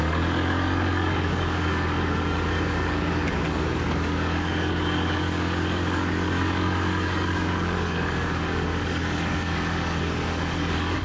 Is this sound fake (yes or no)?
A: yes